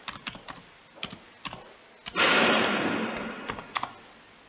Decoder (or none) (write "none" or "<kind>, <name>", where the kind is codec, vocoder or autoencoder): none